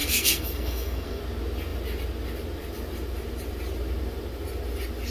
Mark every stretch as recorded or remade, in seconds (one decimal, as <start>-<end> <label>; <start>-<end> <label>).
0.0-1.2 remade; 1.2-5.1 recorded